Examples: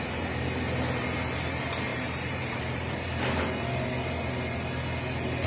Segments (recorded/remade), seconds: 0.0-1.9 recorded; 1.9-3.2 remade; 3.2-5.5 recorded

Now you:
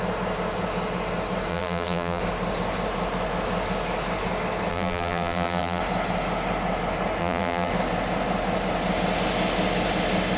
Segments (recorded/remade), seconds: 0.0-1.5 recorded; 1.5-2.2 remade; 2.2-4.7 recorded; 4.7-5.8 remade; 5.8-7.2 recorded; 7.2-7.7 remade; 7.7-10.4 recorded

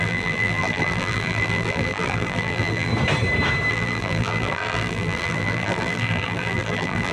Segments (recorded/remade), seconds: 0.0-2.9 remade; 2.9-3.7 recorded; 3.7-7.1 remade

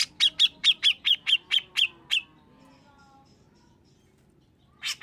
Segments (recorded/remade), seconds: 0.0-0.6 recorded; 0.6-1.7 remade; 1.7-5.0 recorded

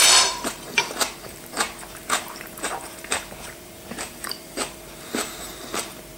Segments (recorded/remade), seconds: 0.0-6.2 remade

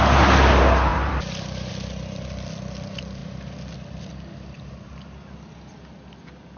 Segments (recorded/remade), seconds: 0.0-0.9 recorded; 0.9-1.7 remade; 1.7-6.6 recorded